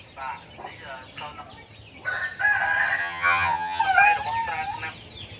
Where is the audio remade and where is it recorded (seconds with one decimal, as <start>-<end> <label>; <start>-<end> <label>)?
0.0-3.0 recorded; 3.0-3.8 remade; 3.8-5.4 recorded